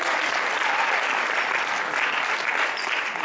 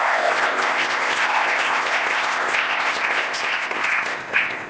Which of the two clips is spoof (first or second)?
second